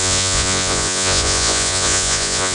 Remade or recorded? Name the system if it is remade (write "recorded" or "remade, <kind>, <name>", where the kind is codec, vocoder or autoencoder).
remade, vocoder, Vocos